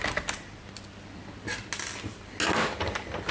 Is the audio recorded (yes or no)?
yes